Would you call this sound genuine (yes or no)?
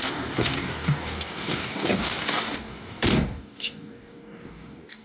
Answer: no